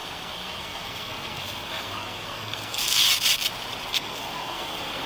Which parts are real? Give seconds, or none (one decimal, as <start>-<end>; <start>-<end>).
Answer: 3.0-3.9